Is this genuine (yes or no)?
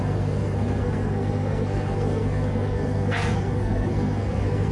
no